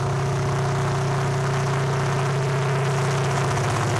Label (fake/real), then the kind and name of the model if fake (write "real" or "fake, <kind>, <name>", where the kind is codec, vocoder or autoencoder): real